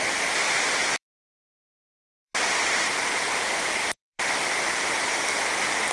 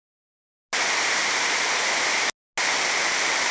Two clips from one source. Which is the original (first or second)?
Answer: second